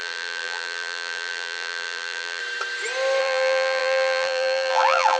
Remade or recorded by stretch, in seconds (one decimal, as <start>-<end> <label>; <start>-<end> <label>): 0.0-2.4 remade; 2.4-3.2 recorded; 3.2-5.2 remade